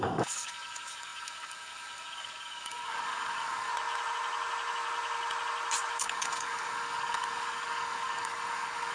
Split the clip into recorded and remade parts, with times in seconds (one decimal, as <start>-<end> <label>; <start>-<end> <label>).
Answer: 0.0-3.7 remade; 3.7-6.0 recorded; 6.0-8.9 remade